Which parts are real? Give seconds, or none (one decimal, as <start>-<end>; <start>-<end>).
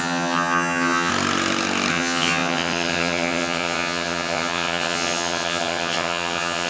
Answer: 1.1-1.9